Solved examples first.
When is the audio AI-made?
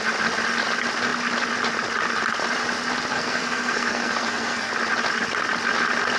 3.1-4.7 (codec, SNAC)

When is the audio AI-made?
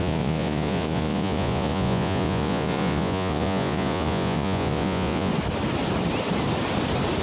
0.0-5.3 (vocoder, Vocos)